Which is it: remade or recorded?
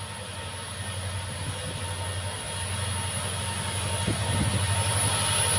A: recorded